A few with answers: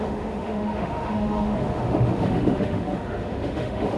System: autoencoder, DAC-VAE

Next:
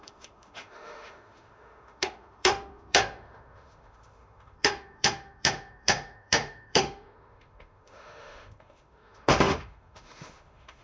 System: autoencoder, DAC-VAE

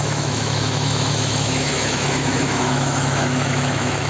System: autoencoder, DAC-VAE